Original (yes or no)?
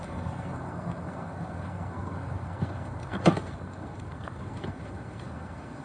no